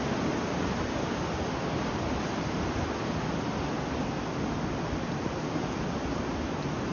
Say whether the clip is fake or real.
real